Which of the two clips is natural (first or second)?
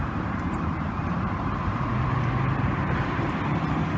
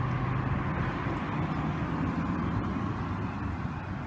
second